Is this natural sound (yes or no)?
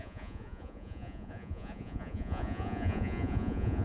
no